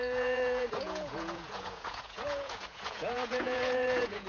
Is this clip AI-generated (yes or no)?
yes